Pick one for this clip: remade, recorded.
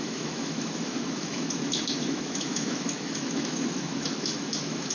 remade